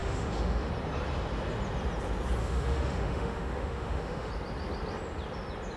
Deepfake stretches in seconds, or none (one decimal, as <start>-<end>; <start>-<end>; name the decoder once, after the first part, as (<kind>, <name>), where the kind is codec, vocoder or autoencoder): 0.0-0.7 (autoencoder, DAC-VAE); 2.4-4.3